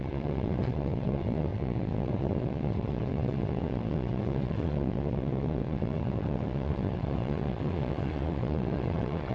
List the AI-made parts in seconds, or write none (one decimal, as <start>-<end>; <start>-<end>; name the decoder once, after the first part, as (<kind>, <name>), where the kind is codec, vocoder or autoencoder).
0.0-9.3 (vocoder, WaveNeXt)